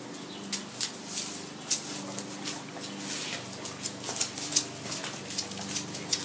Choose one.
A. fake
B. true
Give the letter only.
B